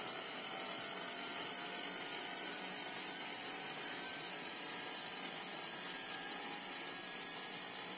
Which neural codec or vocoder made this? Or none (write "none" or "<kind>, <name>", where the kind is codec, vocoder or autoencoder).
vocoder, BigVGAN v2